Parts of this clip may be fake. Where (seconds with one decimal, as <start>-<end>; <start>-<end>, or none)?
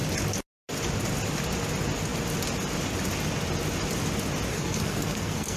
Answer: 4.5-5.6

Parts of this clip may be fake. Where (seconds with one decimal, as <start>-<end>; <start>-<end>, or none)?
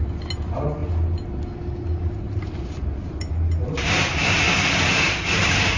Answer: none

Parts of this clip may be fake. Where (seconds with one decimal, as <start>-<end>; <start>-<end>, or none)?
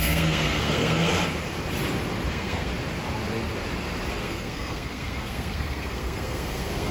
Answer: 0.0-1.1; 2.3-2.7; 4.1-6.9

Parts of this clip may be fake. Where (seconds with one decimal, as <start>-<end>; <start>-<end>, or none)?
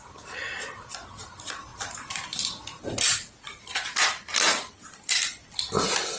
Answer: 1.7-3.4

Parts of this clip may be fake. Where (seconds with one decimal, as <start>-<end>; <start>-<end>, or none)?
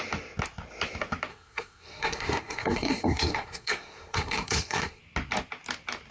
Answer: 1.3-5.0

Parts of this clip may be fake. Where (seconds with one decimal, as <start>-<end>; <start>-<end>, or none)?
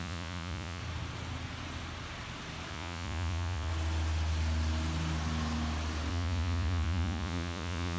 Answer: 0.0-0.8; 2.7-3.7; 6.1-8.0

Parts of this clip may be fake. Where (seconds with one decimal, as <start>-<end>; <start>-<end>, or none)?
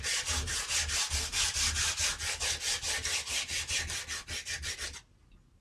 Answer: none